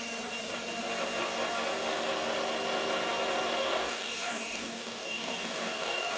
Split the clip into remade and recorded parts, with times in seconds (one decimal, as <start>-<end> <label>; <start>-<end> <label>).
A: 0.0-3.6 recorded; 3.6-6.2 remade